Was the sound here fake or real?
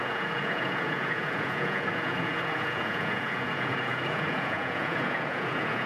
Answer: fake